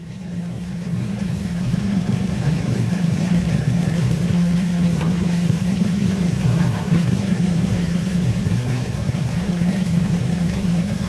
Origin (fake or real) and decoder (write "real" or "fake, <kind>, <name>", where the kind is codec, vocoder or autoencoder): fake, codec, SNAC